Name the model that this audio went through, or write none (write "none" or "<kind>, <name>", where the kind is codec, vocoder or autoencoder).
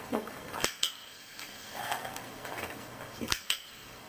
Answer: codec, SNAC